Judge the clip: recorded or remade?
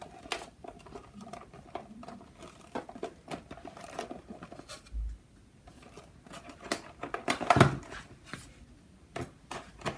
recorded